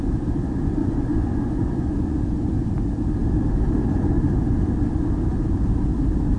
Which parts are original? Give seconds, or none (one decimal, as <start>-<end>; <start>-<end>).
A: 0.0-0.8; 2.2-6.4

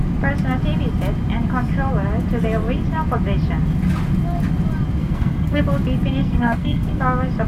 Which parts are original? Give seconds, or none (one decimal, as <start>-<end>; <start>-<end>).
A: 0.0-5.0; 5.6-6.2; 7.0-7.5

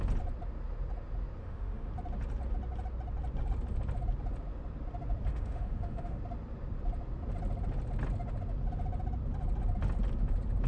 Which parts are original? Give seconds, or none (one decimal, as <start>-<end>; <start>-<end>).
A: 0.0-1.4; 1.9-5.3; 6.2-10.7